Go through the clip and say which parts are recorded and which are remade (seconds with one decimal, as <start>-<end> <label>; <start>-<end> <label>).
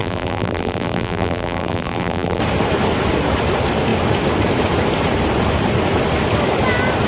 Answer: 0.0-2.4 remade; 2.4-7.1 recorded